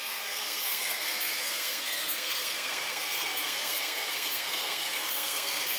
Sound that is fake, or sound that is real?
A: fake